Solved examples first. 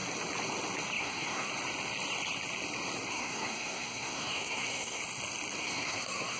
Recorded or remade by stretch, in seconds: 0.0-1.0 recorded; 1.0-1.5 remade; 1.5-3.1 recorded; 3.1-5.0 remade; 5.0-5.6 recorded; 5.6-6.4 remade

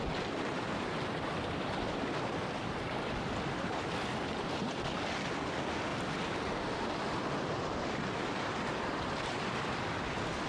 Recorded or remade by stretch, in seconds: 0.0-10.5 recorded

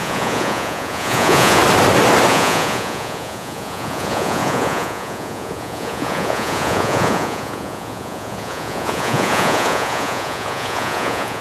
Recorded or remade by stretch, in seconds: 0.0-1.6 remade; 1.6-2.3 recorded; 2.3-11.4 remade

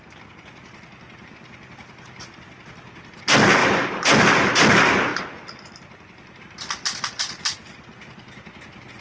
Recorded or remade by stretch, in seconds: 0.0-3.6 recorded; 3.6-4.5 remade; 4.5-9.0 recorded

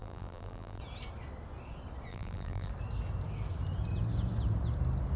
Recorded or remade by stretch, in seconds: 0.0-0.8 remade; 0.8-2.1 recorded; 2.1-2.7 remade; 2.7-5.2 recorded